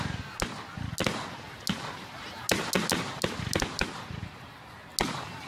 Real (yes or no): yes